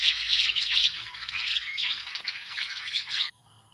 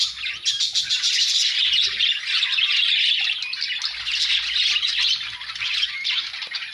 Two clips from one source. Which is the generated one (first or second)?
first